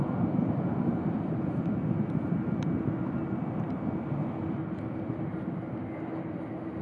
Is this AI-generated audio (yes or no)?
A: no